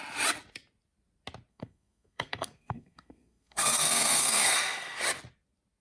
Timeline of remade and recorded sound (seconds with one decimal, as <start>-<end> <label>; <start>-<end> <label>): 0.0-1.5 recorded; 1.5-5.0 remade; 5.0-5.8 recorded